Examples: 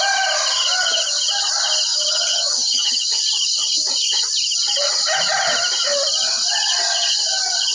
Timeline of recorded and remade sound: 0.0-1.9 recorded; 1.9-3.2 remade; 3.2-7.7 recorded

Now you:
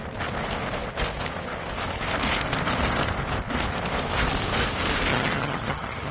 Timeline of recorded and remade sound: 0.0-5.1 recorded; 5.1-6.1 remade

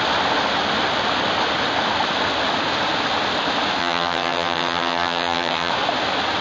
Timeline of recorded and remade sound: 0.0-3.8 recorded; 3.8-5.7 remade; 5.7-6.4 recorded

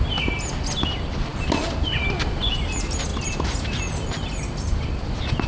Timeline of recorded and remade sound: 0.0-5.5 recorded

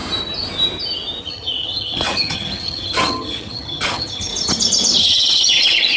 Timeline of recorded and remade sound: 0.0-1.2 recorded; 1.2-4.3 remade; 4.3-5.0 recorded; 5.0-6.0 remade